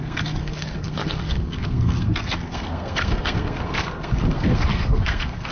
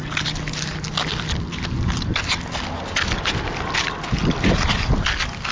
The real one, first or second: second